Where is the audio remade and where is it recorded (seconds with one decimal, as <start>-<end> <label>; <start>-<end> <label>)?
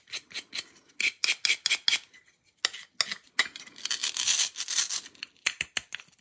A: 0.0-6.2 recorded